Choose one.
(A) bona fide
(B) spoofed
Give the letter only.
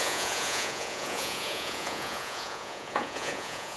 B